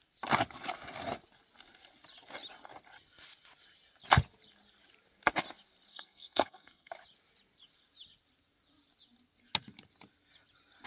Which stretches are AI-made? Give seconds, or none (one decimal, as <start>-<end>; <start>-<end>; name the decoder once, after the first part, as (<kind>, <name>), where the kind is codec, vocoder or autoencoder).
5.9-6.9 (codec, SNAC)